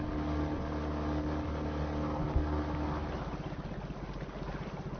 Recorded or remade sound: recorded